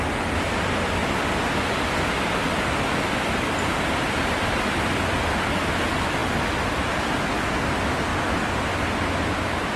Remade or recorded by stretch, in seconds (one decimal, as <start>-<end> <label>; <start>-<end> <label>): 0.0-9.8 recorded